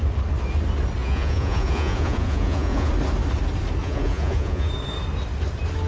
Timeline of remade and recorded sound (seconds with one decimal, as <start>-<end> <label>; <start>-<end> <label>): 0.0-1.0 recorded; 1.0-2.9 remade; 2.9-3.8 recorded; 3.8-4.7 remade; 4.7-5.9 recorded